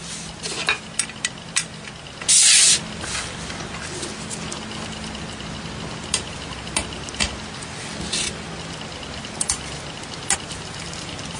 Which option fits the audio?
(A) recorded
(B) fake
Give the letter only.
A